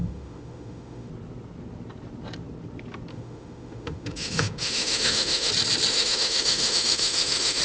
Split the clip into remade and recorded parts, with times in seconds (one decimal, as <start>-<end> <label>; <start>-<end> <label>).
0.0-1.1 remade; 1.1-3.1 recorded; 3.1-5.5 remade; 5.5-5.9 recorded; 5.9-7.6 remade